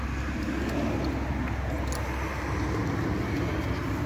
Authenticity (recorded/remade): recorded